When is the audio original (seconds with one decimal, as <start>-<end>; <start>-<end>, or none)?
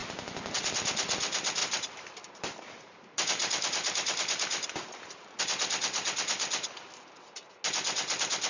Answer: 0.7-1.6; 5.4-8.5